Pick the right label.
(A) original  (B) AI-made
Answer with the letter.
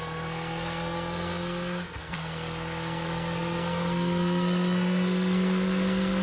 B